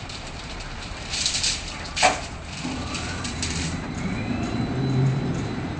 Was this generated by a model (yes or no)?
yes